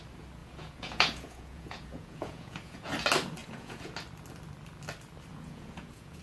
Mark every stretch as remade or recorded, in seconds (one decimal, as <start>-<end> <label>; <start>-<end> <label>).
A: 0.0-0.4 recorded; 0.4-2.9 remade; 2.9-3.4 recorded; 3.4-3.9 remade; 3.9-5.3 recorded; 5.3-6.2 remade